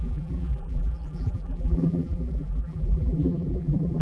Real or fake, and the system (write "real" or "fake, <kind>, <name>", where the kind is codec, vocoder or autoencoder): fake, vocoder, BigVGAN v2